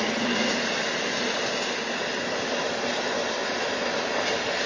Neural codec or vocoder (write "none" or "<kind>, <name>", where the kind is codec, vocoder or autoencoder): none